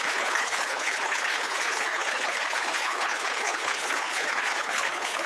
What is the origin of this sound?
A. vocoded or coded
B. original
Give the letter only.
A